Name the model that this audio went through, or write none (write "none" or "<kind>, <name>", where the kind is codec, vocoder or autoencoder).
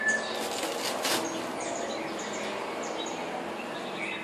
none